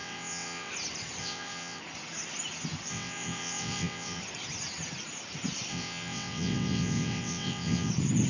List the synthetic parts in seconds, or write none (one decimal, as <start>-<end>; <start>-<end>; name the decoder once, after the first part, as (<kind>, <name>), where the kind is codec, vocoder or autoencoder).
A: 0.0-0.7 (vocoder, WaveNeXt); 1.2-1.8; 2.9-4.2; 5.7-7.9